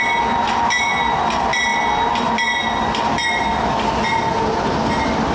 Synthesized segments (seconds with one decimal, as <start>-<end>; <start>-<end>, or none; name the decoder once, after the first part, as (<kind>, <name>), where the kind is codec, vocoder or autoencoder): none